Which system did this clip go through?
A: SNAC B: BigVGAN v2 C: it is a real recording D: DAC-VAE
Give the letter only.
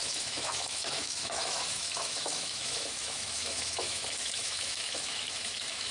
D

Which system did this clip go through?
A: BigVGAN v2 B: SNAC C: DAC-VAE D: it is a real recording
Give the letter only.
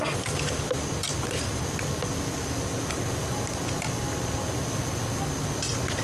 D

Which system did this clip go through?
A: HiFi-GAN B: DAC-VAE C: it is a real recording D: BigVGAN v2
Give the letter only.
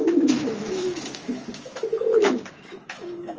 B